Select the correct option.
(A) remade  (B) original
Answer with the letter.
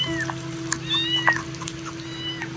B